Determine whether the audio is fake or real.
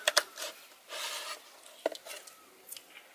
real